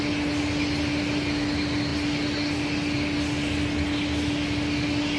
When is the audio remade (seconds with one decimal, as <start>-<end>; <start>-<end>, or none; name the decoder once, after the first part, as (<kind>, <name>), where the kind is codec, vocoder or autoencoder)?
none